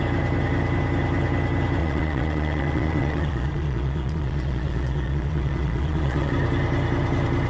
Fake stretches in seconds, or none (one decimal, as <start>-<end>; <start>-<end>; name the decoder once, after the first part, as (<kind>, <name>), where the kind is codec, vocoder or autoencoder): 1.8-6.3 (vocoder, Vocos)